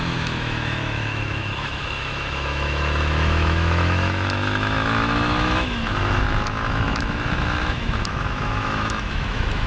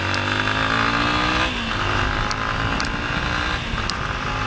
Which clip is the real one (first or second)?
second